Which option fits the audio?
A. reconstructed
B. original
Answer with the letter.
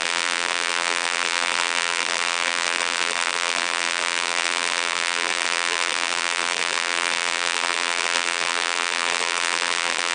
A